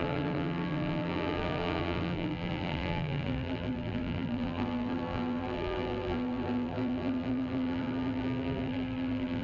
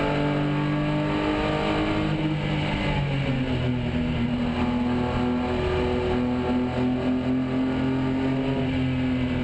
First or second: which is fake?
first